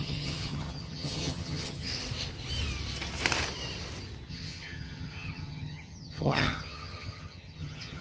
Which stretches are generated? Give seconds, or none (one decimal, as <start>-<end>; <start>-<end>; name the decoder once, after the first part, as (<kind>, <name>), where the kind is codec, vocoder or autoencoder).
0.0-1.9 (vocoder, HiFi-GAN); 4.3-8.0